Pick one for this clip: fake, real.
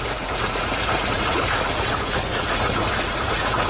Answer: fake